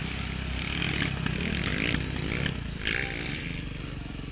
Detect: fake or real real